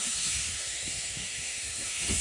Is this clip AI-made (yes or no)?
yes